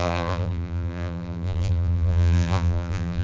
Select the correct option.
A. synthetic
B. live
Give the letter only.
A